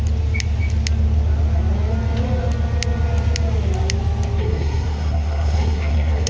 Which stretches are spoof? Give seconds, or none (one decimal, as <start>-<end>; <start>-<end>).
4.4-6.3